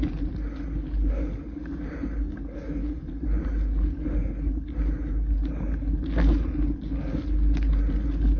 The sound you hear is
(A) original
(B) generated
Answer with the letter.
A